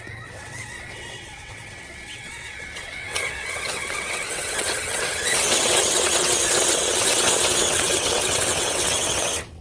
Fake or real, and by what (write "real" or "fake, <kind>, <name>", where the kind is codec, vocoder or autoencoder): fake, vocoder, WaveNeXt